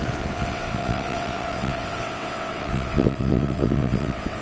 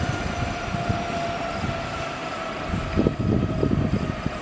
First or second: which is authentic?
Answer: second